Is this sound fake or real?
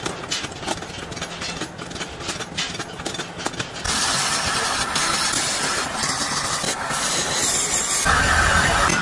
real